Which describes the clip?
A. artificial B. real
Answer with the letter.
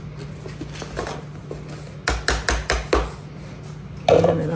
B